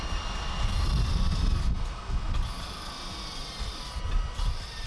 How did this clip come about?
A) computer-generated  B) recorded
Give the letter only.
B